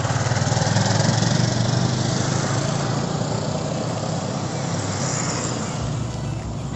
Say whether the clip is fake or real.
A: real